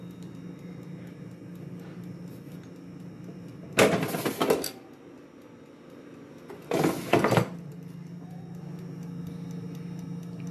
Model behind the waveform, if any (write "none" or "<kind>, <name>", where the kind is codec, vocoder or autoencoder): none